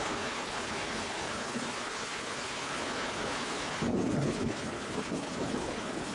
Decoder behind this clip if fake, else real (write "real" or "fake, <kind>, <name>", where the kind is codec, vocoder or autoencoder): fake, codec, HILCodec